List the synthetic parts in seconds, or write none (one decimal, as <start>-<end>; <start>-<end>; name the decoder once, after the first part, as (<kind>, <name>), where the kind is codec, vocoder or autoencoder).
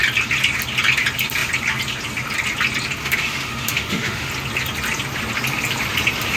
3.0-4.3 (autoencoder, DAC-VAE)